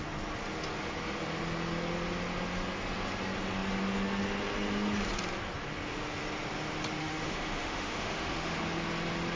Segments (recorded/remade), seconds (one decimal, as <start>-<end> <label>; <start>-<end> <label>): 0.0-7.0 recorded; 7.0-8.6 remade; 8.6-9.4 recorded